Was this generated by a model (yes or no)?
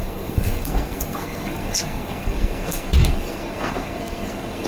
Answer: yes